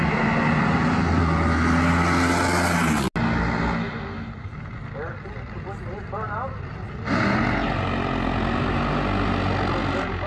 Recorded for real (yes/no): yes